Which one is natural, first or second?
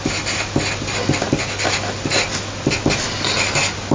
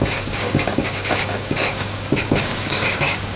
first